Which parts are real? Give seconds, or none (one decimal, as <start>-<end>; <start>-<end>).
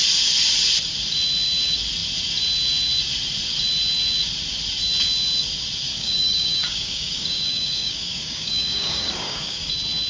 0.0-5.9; 9.7-10.1